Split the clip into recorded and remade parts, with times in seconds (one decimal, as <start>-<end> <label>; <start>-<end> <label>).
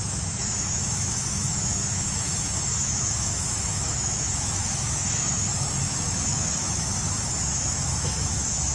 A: 0.0-8.7 remade